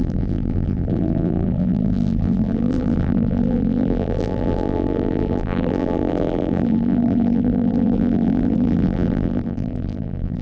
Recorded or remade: remade